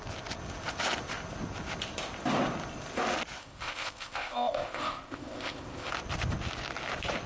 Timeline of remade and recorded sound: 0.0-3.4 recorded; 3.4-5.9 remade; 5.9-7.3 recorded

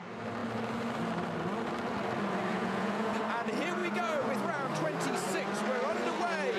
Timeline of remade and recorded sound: 0.0-2.5 recorded; 2.5-3.2 remade; 3.2-3.8 recorded; 3.8-4.3 remade; 4.3-6.6 recorded

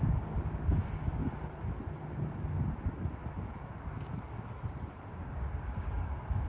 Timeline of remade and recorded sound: 0.0-1.2 remade; 1.2-5.1 recorded; 5.1-6.5 remade

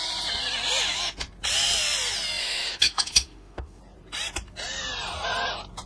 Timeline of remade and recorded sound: 0.0-2.4 recorded; 2.4-3.8 remade; 3.8-5.9 recorded